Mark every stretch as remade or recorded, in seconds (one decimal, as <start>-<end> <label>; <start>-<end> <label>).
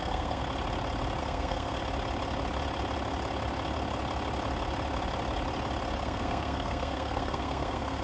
0.0-0.4 remade; 0.4-1.2 recorded; 1.2-1.8 remade; 1.8-6.0 recorded; 6.0-8.0 remade